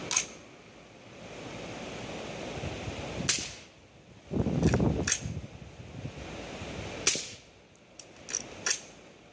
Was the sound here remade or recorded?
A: recorded